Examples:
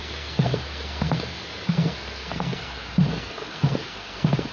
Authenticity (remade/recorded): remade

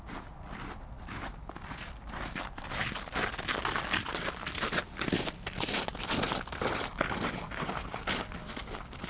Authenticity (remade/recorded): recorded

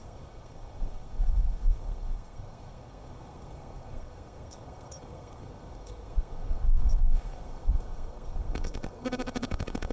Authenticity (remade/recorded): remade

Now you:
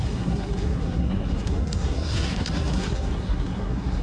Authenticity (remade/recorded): remade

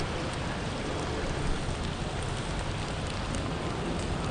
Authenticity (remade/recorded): recorded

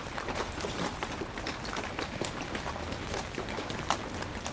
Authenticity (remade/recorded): recorded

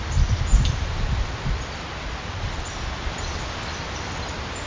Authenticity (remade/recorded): recorded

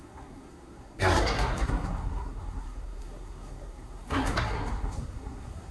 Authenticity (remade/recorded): remade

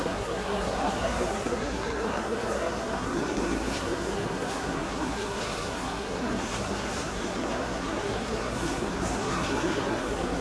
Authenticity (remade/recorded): remade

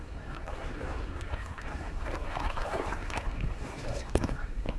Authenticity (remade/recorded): remade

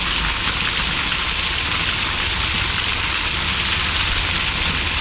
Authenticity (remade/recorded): recorded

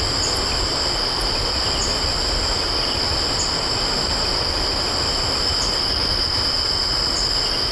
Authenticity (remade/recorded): recorded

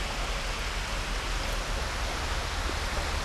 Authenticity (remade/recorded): recorded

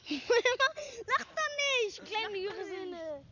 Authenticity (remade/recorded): recorded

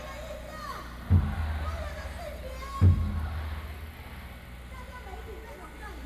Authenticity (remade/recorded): recorded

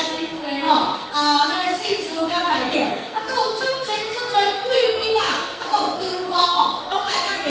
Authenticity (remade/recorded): remade